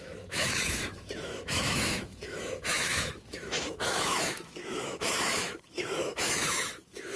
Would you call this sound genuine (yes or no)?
no